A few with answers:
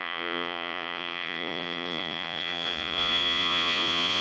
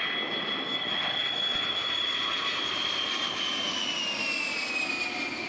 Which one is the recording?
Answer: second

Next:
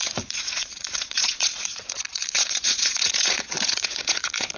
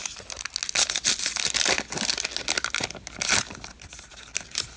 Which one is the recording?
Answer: second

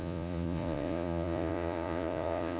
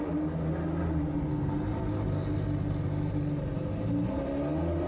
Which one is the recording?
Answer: second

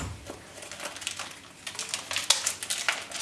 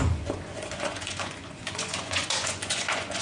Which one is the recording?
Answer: first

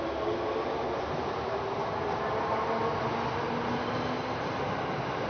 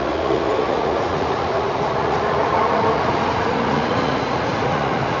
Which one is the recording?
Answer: first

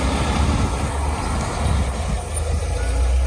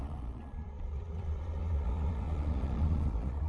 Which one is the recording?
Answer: first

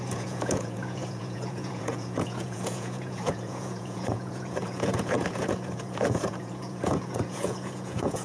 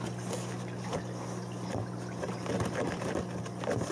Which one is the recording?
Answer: second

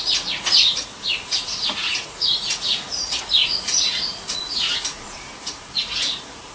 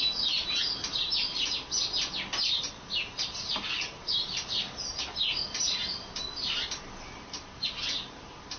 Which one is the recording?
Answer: second